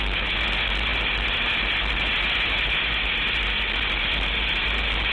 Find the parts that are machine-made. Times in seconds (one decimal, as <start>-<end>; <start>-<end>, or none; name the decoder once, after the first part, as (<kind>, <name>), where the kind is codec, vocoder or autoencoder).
none